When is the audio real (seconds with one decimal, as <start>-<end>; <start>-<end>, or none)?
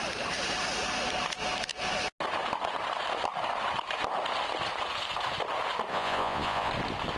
0.0-5.9; 6.7-7.2